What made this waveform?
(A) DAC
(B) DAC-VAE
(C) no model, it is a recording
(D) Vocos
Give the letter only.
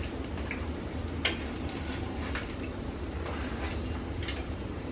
C